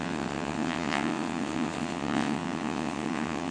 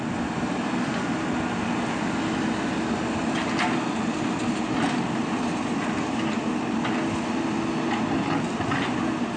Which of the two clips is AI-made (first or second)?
first